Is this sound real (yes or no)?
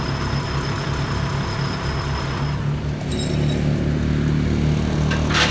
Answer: yes